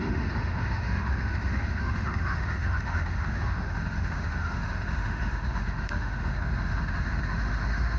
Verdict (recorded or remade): remade